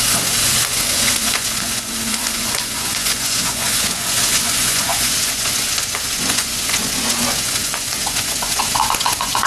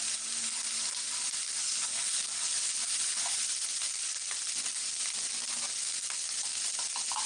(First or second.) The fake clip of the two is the first